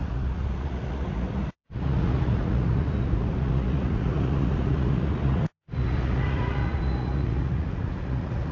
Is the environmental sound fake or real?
fake